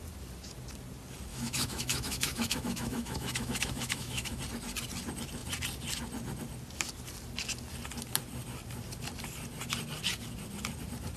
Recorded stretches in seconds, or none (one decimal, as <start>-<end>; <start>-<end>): 0.0-1.3; 4.4-11.2